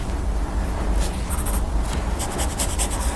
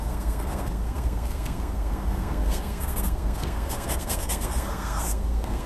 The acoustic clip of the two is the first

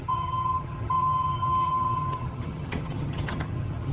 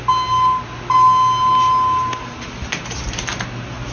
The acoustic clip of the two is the second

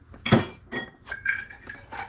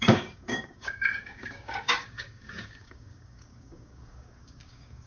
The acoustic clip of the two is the first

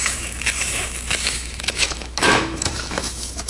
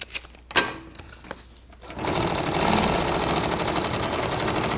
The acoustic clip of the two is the second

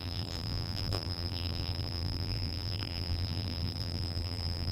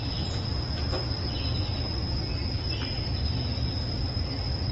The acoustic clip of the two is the second